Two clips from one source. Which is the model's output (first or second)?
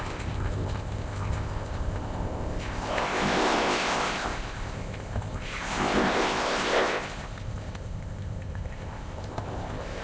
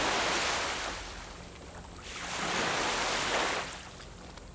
first